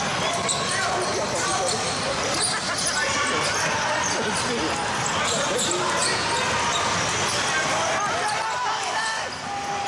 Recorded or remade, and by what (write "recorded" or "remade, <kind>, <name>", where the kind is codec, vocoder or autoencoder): recorded